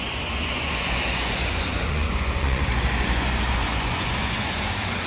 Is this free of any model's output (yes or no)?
no